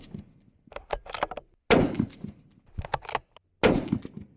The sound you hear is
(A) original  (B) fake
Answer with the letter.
A